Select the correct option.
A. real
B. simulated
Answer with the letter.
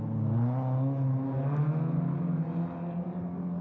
A